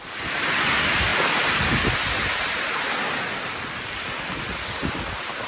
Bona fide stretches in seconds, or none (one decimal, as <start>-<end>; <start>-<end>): 0.0-5.5